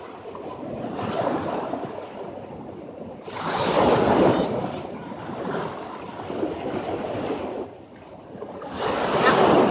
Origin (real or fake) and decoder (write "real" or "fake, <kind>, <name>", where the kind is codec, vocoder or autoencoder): fake, vocoder, BigVGAN v2